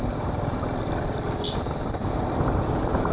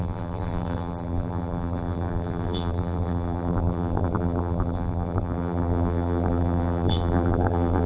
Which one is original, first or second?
first